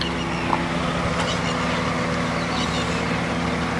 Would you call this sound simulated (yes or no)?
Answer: no